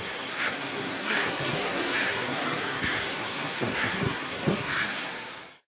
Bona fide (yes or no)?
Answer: no